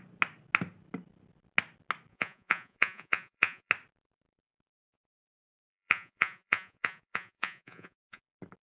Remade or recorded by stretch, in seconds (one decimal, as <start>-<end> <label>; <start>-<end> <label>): 0.0-2.1 recorded; 2.1-3.7 remade; 3.7-4.7 recorded; 4.7-8.2 remade; 8.2-8.6 recorded